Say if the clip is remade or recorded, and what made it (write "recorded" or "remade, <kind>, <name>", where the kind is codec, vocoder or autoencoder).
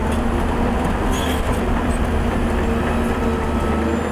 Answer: recorded